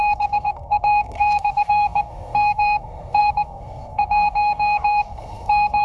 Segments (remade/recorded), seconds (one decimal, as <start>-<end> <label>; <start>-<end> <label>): 0.0-5.8 remade